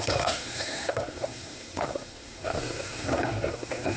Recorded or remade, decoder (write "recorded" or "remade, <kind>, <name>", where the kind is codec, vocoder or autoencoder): remade, codec, SNAC